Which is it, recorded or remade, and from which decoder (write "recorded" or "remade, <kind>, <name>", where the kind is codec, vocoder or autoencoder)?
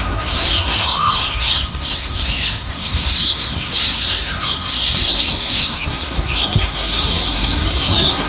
remade, codec, SNAC